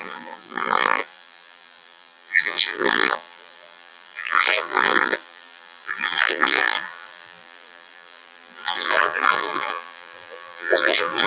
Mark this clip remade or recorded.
remade